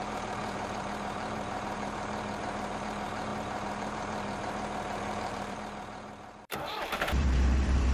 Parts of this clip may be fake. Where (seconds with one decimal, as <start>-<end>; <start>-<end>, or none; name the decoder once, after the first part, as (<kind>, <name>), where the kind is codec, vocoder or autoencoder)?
0.0-7.9 (vocoder, BigVGAN v2)